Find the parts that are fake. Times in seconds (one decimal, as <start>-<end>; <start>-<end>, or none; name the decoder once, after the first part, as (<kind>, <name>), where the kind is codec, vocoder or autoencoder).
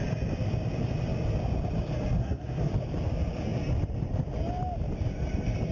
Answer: 2.2-2.7 (codec, SNAC)